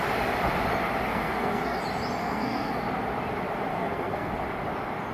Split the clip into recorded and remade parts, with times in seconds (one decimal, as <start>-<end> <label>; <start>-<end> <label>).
0.0-1.1 recorded; 1.1-1.8 remade; 1.8-2.2 recorded; 2.2-2.8 remade; 2.8-3.7 recorded; 3.7-4.3 remade; 4.3-5.1 recorded